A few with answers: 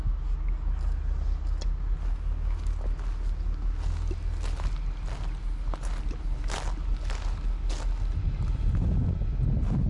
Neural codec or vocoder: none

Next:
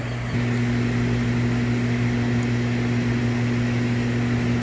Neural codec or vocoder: none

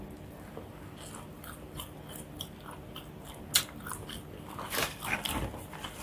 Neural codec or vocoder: none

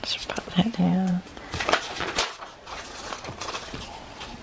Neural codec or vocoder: vocoder, Vocos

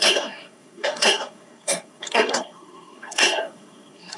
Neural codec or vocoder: codec, SNAC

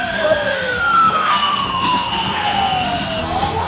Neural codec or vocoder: codec, SNAC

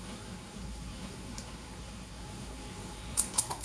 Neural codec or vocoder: codec, SNAC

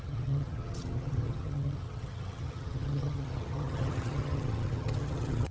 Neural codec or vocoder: vocoder, HiFi-GAN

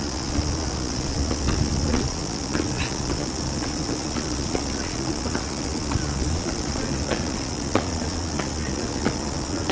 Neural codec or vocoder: vocoder, Vocos